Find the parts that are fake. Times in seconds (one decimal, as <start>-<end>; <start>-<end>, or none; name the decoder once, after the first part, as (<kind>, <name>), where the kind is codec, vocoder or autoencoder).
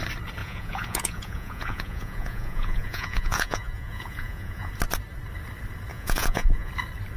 0.4-4.7 (vocoder, Vocos); 5.9-6.7